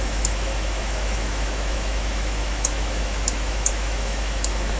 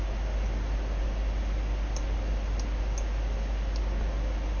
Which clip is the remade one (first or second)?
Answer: first